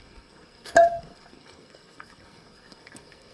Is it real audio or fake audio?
fake